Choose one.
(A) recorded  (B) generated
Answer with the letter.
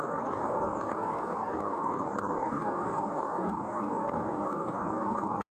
B